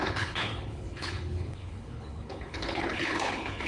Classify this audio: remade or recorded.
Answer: remade